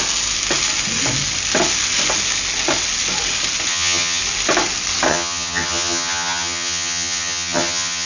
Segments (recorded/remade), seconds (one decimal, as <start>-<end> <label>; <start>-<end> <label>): 0.0-3.7 recorded; 3.7-4.2 remade; 4.2-5.1 recorded; 5.1-8.1 remade